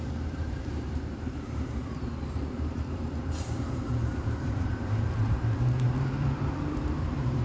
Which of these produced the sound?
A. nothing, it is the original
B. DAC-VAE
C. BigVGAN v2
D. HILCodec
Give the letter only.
C